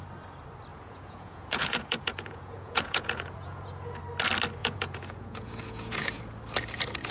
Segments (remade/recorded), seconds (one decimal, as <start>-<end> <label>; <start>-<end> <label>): 0.0-0.7 recorded; 0.7-4.0 remade; 4.0-4.6 recorded; 4.6-6.2 remade; 6.2-7.1 recorded